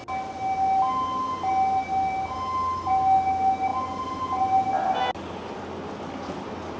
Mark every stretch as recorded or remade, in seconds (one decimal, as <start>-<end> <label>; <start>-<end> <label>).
0.0-6.8 recorded